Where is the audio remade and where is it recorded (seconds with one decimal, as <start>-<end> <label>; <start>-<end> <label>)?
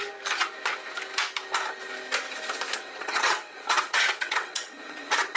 0.0-2.8 recorded; 2.8-5.4 remade